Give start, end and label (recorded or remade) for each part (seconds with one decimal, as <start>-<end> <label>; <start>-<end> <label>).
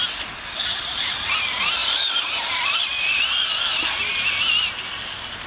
0.0-5.5 recorded